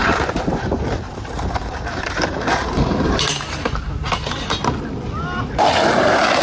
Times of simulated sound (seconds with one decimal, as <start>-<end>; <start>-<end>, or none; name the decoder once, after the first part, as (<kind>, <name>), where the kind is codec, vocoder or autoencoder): 0.0-3.8 (vocoder, BigVGAN v2)